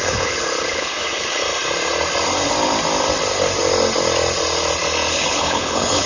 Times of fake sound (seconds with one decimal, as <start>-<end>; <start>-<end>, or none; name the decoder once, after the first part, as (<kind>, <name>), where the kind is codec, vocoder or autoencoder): 0.0-1.4 (codec, HILCodec); 5.1-6.1